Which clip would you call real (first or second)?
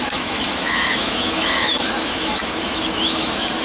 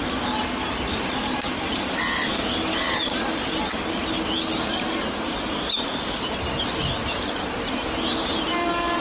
second